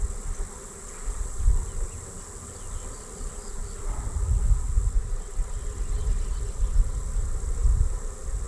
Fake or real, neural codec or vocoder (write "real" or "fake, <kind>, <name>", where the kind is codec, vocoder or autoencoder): real